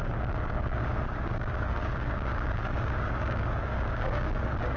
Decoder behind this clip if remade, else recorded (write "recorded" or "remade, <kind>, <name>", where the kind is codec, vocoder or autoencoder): remade, codec, DAC